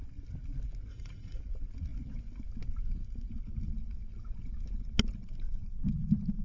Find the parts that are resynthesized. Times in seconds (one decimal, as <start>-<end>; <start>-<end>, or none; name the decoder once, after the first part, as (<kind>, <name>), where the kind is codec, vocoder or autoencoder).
0.9-1.4 (vocoder, Vocos)